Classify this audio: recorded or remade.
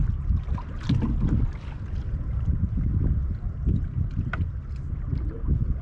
recorded